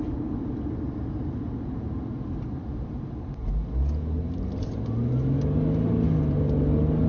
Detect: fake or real real